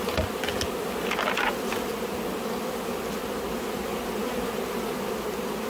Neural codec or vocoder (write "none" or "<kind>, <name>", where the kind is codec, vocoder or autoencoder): none